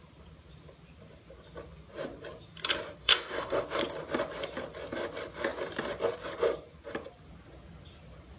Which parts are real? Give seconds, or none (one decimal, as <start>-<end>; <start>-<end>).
0.0-3.0; 3.6-8.4